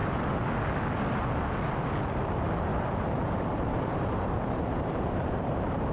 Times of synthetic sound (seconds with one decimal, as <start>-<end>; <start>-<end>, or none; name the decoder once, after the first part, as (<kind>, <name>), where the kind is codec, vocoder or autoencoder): 2.7-5.9 (vocoder, BigVGAN v2)